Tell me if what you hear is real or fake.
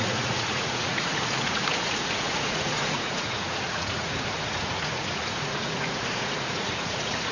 fake